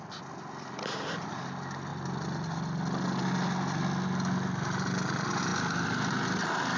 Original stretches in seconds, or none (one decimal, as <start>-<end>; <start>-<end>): 0.0-6.8